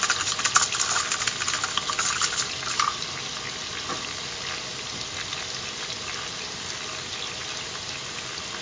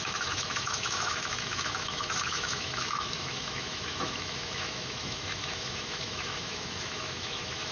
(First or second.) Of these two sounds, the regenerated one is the second